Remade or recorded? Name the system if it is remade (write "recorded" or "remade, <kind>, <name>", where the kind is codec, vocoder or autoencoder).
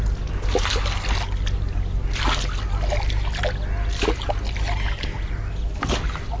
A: recorded